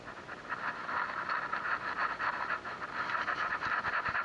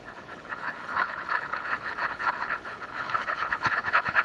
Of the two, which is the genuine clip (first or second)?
first